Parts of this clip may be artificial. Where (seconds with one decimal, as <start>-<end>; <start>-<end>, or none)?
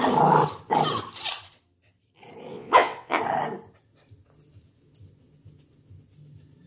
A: 2.5-3.2